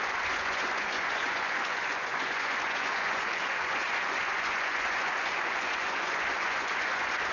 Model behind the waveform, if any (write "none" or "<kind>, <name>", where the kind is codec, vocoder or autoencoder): vocoder, Vocos